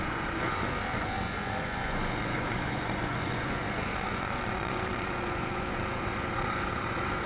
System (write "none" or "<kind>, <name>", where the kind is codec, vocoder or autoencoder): vocoder, Vocos